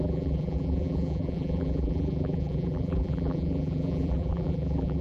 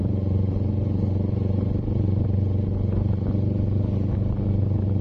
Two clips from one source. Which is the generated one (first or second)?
first